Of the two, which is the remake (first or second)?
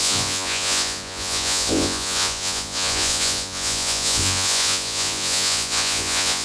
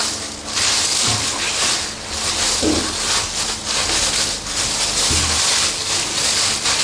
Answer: first